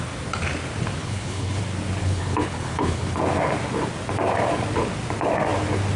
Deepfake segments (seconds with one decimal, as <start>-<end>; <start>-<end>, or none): 1.0-1.6; 2.0-3.2